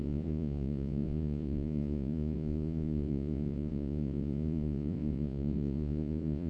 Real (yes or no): no